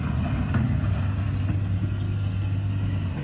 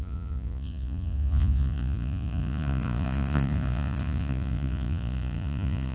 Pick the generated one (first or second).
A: second